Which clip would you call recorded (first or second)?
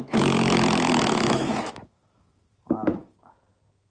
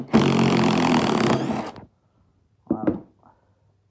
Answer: second